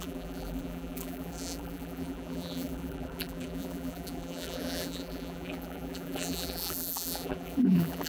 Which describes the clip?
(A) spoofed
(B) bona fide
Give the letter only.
A